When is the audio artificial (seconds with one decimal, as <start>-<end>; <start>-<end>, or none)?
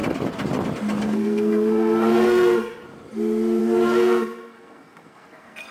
1.0-2.8; 3.6-5.7